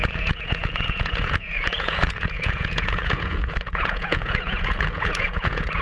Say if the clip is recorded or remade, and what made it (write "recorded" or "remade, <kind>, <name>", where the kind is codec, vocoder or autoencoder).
remade, vocoder, Vocos